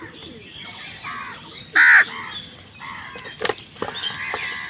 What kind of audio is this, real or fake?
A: real